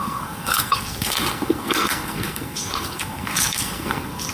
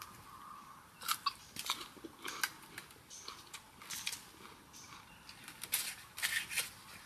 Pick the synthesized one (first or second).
first